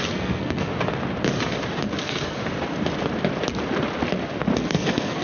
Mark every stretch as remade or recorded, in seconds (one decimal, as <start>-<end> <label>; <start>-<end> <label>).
0.0-0.7 remade; 0.7-2.0 recorded; 2.0-2.4 remade; 2.4-4.6 recorded; 4.6-5.2 remade